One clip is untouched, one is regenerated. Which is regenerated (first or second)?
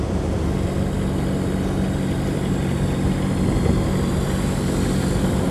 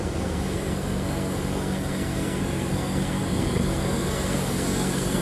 second